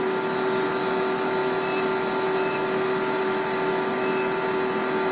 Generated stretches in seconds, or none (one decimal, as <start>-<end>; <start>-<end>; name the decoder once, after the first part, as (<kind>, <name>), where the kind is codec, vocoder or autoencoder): none